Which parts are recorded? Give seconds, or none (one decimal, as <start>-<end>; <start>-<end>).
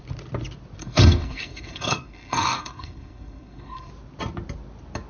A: 0.0-0.8; 3.9-5.1